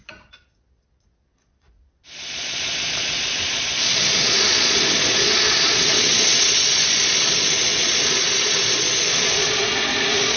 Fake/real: fake